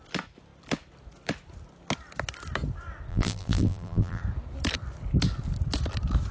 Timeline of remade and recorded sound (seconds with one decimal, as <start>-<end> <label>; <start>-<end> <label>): 0.0-3.1 recorded; 3.1-4.2 remade; 4.2-6.3 recorded